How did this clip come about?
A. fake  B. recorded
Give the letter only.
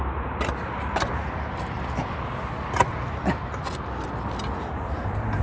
B